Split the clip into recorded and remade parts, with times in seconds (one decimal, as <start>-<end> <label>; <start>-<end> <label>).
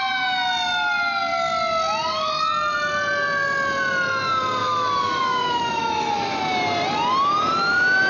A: 0.0-4.6 recorded; 4.6-6.4 remade; 6.4-8.1 recorded